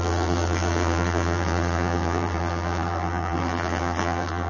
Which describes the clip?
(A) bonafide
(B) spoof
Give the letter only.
B